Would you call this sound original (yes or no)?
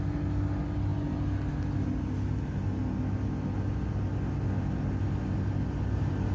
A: yes